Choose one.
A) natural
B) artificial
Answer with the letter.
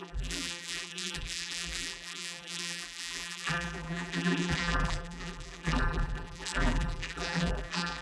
B